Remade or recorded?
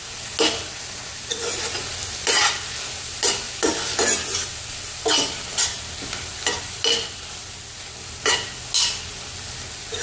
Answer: recorded